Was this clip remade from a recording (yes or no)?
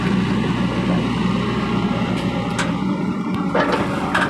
no